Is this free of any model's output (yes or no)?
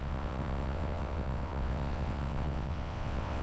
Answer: no